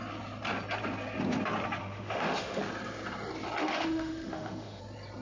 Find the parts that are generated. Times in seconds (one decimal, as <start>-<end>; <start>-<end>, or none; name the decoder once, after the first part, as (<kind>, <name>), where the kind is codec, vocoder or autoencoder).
1.8-2.6 (autoencoder, DAC-VAE); 3.6-4.8